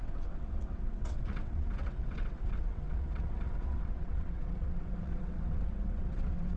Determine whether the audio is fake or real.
fake